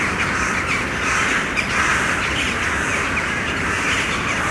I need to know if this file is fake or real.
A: real